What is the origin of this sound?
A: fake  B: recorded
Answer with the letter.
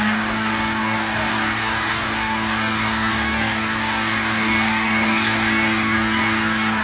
A